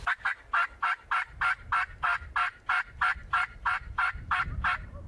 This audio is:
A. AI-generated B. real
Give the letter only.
B